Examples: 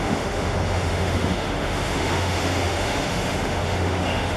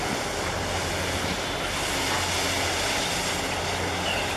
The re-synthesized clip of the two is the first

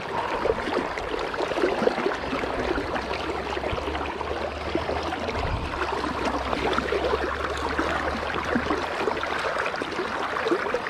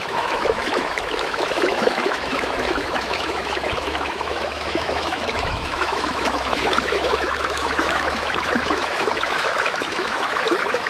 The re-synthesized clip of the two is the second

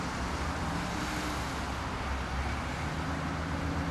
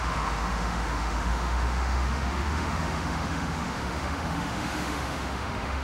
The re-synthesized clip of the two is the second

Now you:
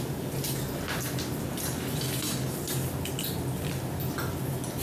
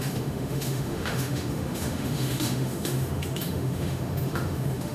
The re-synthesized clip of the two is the second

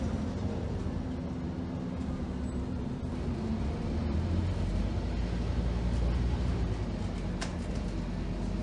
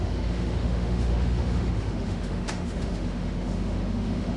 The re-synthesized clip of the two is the second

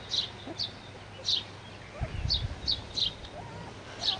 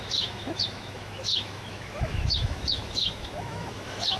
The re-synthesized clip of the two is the second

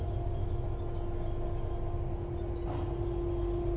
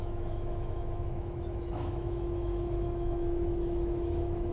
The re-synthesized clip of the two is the second